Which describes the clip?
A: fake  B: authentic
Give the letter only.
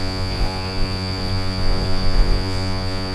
A